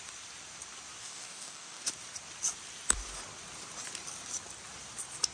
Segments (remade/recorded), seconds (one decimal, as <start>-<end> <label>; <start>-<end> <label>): 0.0-1.0 recorded; 1.0-1.9 remade; 1.9-5.3 recorded